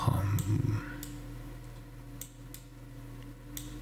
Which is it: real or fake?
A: real